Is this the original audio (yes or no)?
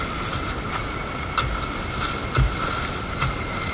yes